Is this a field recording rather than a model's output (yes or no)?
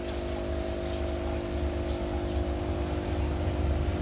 yes